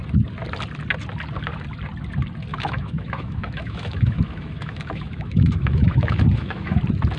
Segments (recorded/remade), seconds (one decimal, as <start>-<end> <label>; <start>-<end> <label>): 0.0-2.5 recorded; 2.5-6.8 remade; 6.8-7.2 recorded